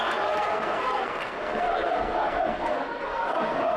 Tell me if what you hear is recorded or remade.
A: remade